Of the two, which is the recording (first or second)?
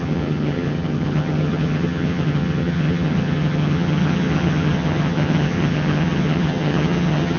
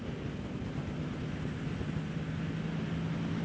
second